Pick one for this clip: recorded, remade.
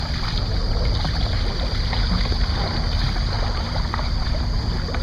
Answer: recorded